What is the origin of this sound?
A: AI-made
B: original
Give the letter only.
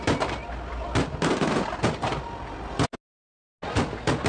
B